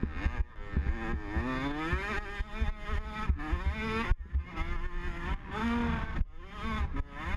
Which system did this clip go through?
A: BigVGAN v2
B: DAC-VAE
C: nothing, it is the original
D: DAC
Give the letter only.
C